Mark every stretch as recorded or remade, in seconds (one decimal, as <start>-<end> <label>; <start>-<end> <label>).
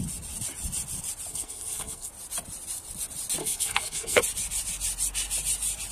0.0-1.3 recorded; 1.3-2.1 remade; 2.1-3.4 recorded; 3.4-4.2 remade; 4.2-5.9 recorded